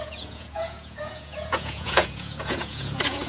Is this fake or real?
fake